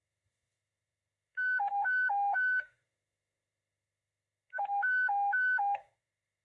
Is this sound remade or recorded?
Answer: remade